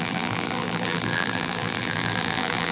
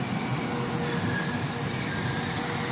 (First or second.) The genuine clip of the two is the second